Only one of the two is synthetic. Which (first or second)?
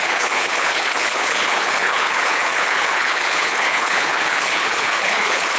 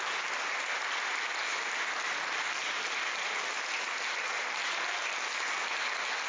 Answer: first